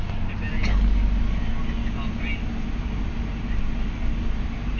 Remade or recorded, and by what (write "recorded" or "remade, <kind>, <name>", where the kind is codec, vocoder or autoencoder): recorded